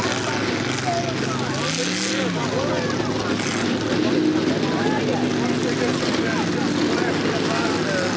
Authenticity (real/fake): real